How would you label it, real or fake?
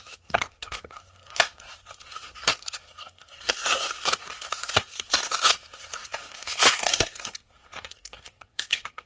fake